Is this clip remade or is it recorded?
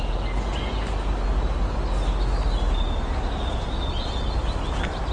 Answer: recorded